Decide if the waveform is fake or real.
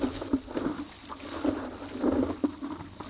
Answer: fake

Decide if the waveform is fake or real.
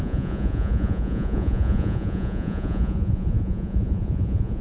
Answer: fake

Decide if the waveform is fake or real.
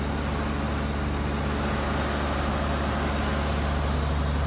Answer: real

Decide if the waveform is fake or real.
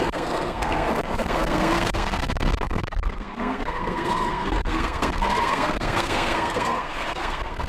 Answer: fake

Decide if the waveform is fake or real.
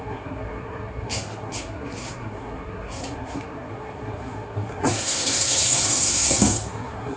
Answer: fake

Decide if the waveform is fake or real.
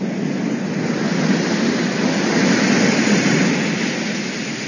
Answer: real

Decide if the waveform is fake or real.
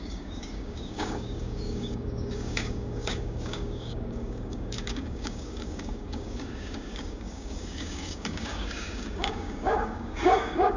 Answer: fake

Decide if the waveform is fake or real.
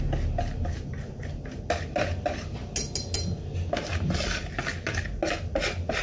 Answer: real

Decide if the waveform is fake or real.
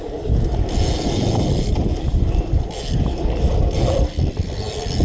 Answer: real